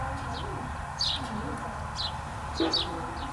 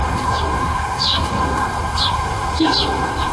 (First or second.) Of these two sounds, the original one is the first